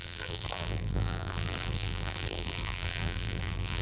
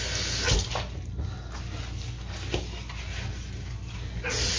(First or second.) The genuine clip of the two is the second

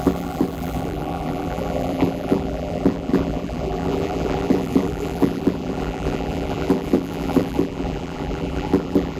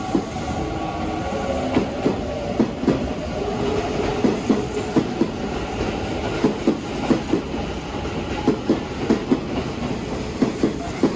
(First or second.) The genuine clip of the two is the second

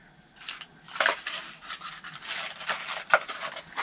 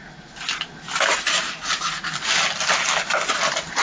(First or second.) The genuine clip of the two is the second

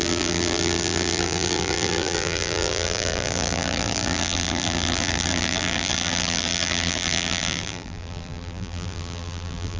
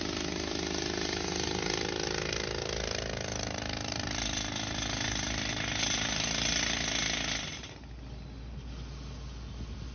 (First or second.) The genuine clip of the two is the second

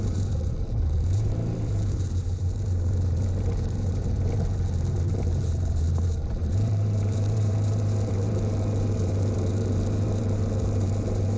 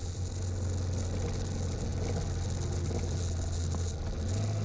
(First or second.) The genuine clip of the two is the second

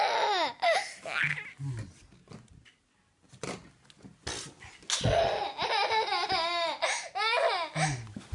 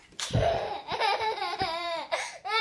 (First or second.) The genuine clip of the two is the first